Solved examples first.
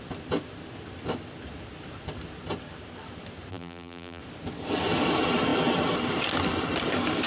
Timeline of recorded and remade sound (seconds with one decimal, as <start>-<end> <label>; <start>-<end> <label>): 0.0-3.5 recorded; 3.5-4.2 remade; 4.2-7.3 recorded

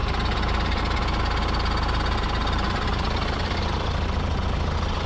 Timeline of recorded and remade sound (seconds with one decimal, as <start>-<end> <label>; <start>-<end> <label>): 0.0-0.8 remade; 0.8-2.4 recorded; 2.4-3.9 remade; 3.9-5.1 recorded

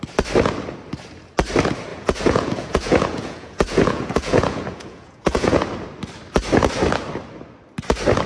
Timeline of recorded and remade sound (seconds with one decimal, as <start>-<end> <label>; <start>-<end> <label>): 0.0-1.9 recorded; 1.9-5.6 remade; 5.6-8.3 recorded